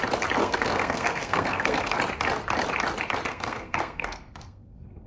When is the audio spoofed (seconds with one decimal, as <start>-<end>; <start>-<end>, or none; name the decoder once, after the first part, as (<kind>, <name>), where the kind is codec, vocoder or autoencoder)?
0.4-1.9 (codec, SNAC); 3.3-5.1